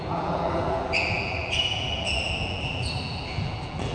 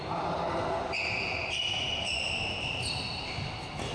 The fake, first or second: first